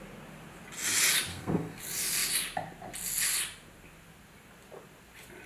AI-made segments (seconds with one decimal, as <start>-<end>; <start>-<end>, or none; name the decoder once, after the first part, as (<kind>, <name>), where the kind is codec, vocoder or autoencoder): 1.3-1.8 (codec, SNAC)